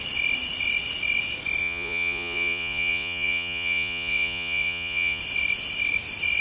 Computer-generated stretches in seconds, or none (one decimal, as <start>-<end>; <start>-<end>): 1.6-5.2